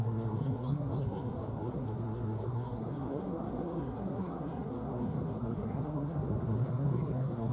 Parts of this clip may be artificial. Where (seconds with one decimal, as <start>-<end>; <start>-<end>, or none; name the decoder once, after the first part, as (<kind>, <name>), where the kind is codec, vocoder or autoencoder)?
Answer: 0.0-7.5 (codec, SNAC)